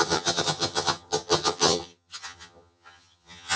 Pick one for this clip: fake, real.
fake